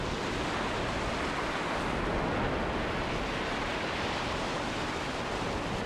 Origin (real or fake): real